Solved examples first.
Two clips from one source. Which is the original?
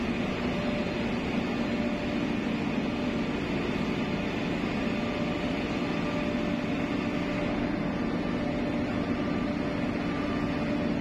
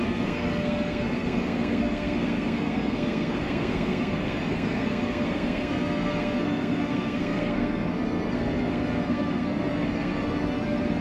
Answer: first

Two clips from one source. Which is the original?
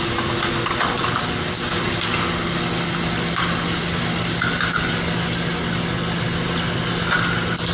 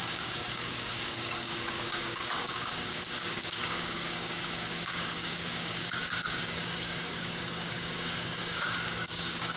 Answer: first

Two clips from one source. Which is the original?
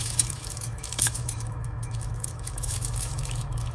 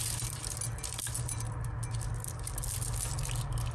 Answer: second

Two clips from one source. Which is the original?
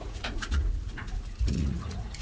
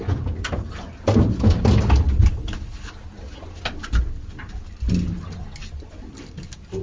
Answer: second